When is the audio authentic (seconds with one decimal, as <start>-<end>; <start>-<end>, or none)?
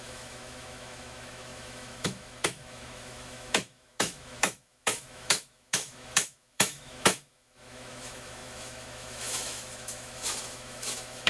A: none